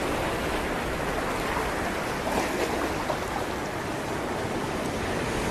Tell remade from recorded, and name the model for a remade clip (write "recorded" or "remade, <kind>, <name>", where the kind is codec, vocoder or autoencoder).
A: recorded